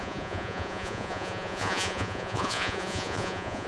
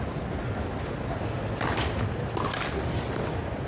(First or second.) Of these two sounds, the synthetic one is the first